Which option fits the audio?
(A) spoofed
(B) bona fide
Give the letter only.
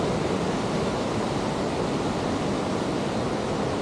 B